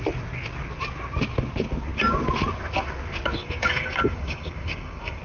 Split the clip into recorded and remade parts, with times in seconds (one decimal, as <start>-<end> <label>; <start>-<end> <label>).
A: 0.0-3.4 recorded; 3.4-5.2 remade